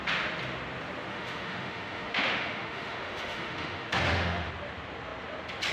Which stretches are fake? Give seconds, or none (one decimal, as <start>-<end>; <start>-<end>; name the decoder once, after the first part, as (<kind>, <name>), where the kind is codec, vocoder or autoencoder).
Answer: 1.1-4.5 (autoencoder, DAC-VAE)